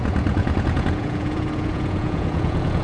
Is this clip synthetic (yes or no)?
yes